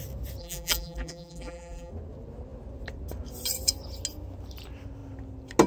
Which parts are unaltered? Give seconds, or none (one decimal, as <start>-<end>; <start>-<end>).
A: 0.0-0.4; 1.9-5.7